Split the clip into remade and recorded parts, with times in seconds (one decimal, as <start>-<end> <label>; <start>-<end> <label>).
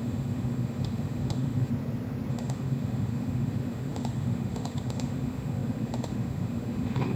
0.0-1.7 remade; 1.7-2.3 recorded; 2.3-7.2 remade